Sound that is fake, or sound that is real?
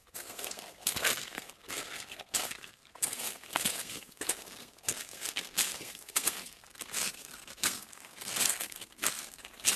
fake